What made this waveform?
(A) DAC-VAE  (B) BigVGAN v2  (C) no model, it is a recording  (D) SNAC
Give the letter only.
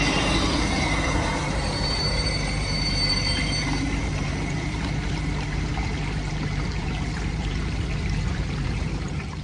B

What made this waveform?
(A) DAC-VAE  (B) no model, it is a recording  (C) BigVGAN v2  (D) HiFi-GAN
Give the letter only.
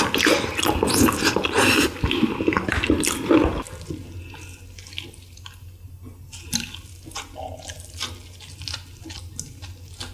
B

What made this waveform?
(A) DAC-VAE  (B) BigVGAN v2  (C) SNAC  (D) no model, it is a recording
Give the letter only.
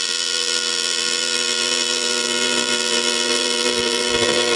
B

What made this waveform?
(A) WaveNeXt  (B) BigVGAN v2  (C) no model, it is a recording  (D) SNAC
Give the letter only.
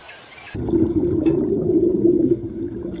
B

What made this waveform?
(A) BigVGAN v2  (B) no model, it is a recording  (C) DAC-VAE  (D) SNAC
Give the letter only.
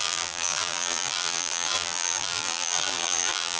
A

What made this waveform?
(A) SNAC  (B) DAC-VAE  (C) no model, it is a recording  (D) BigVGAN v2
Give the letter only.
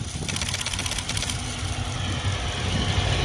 C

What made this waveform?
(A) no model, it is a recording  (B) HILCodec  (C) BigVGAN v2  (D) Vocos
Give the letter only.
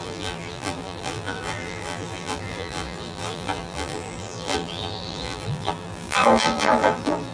C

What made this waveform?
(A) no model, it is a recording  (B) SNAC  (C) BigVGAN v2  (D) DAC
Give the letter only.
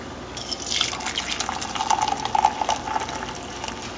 A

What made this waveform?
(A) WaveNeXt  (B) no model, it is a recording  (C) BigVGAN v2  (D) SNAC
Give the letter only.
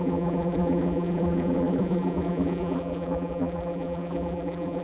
C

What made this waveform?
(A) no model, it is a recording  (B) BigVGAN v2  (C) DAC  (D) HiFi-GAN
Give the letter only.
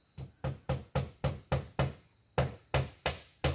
A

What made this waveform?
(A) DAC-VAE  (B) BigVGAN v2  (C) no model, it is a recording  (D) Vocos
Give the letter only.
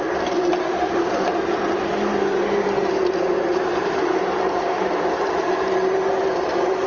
B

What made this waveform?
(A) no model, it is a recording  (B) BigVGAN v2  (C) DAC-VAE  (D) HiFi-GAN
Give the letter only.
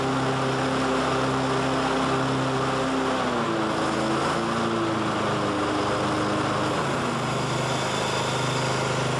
A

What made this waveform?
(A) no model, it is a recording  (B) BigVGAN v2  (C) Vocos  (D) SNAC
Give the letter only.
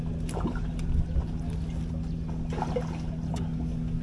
A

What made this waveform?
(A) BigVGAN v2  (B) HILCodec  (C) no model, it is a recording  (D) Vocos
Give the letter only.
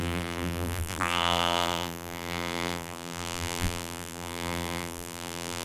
A